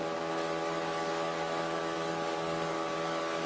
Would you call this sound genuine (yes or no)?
no